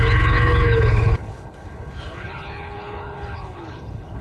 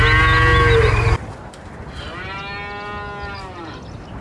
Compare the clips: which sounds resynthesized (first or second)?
first